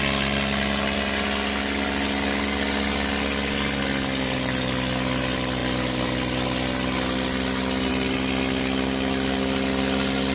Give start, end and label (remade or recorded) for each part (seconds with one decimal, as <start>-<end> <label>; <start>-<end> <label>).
0.0-10.3 recorded